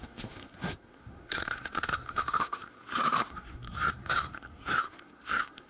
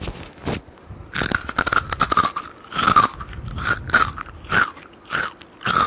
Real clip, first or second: second